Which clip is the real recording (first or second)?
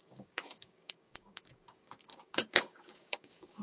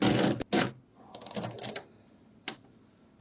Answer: second